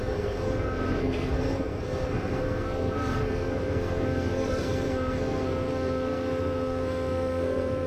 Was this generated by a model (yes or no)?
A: yes